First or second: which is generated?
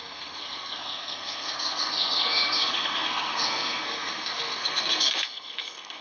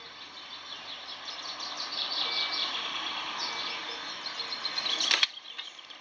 first